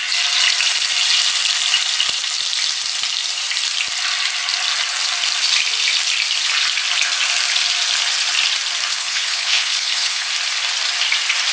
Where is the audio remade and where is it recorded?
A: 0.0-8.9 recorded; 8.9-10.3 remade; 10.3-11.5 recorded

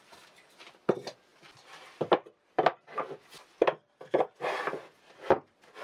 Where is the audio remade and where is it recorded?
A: 0.0-5.8 recorded